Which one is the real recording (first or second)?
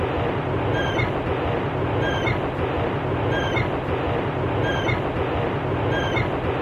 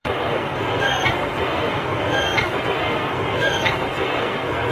first